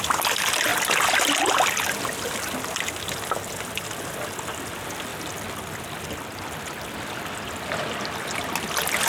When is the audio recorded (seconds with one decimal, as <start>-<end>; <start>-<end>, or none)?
0.0-9.1

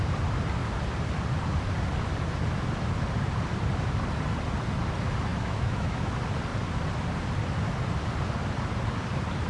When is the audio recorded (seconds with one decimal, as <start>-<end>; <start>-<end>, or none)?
0.0-5.3; 6.1-9.5

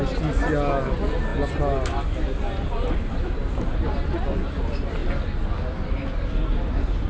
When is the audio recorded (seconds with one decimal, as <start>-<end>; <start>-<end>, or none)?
0.0-7.1

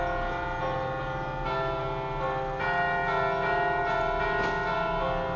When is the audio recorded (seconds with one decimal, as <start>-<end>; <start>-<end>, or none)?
0.0-5.4

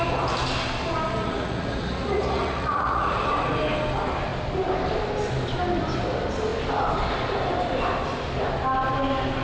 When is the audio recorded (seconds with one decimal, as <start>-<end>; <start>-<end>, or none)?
0.0-1.2; 3.3-9.4

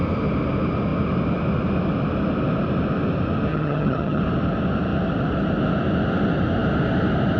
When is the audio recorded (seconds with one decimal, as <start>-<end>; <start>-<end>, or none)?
0.0-3.5; 4.2-7.4

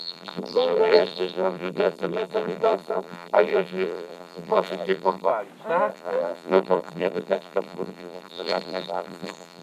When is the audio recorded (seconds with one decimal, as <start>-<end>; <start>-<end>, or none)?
5.3-5.9

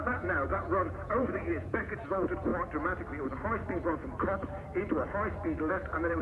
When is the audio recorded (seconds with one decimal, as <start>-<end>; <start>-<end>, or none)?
2.5-5.7